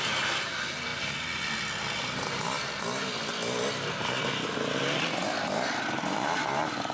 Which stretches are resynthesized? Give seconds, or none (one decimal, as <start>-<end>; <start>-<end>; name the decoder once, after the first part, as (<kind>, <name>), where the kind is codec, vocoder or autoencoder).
none